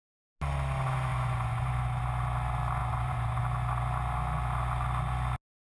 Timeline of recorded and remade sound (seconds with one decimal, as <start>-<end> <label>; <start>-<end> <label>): 0.0-1.1 recorded; 1.1-2.0 remade; 2.0-2.8 recorded; 2.8-3.4 remade; 3.4-5.7 recorded